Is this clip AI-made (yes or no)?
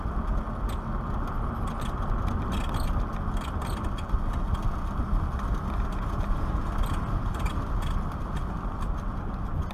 no